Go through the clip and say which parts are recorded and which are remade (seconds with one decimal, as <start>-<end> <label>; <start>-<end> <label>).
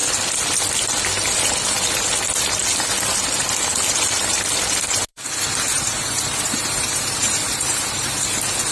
0.0-5.1 recorded; 5.1-8.1 remade; 8.1-8.7 recorded